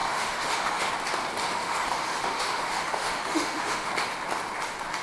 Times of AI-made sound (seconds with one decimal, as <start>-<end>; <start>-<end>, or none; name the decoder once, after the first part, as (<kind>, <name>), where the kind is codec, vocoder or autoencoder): 0.0-0.9 (autoencoder, DAC-VAE); 1.4-3.9